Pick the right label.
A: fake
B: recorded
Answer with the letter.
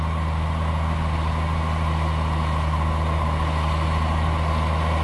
B